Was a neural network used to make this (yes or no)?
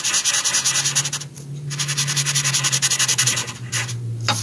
no